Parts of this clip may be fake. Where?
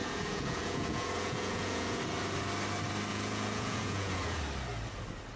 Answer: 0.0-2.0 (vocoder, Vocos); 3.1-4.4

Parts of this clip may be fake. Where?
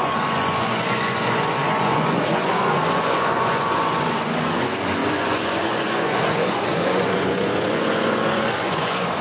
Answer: 0.0-9.2 (vocoder, Vocos)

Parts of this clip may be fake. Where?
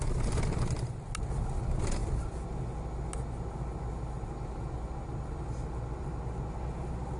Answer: none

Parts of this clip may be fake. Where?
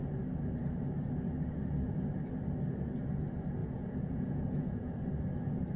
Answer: 3.6-4.9 (vocoder, Vocos)